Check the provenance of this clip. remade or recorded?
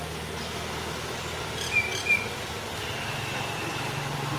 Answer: recorded